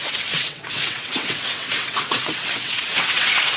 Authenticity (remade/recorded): remade